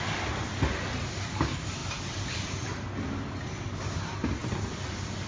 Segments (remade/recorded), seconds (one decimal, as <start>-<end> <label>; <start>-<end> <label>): 0.0-5.3 recorded